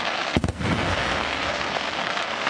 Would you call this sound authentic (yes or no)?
no